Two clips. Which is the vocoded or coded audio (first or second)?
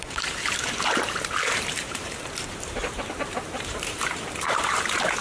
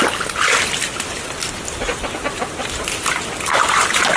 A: first